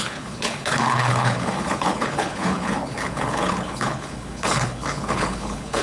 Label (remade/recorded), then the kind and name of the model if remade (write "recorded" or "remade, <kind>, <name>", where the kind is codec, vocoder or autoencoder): remade, codec, HILCodec